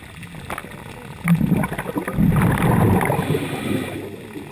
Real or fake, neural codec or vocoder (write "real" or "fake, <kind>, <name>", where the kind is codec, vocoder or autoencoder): real